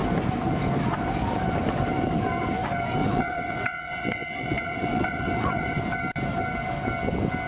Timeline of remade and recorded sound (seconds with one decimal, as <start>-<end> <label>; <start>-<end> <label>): 0.0-3.0 recorded; 3.0-5.8 remade; 5.8-7.5 recorded